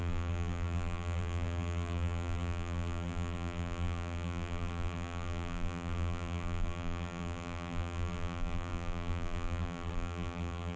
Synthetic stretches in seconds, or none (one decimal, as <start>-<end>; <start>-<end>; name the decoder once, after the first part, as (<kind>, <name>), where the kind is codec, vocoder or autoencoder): 0.0-10.8 (vocoder, BigVGAN v2)